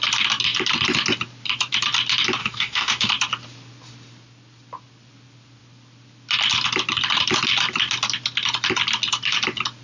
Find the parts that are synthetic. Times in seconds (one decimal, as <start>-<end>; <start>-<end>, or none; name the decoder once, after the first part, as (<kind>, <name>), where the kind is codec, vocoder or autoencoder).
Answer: 2.4-3.1 (autoencoder, DAC-VAE)